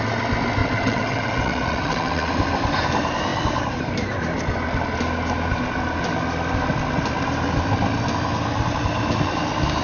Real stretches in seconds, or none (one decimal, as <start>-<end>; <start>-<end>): 0.0-0.6; 2.3-9.8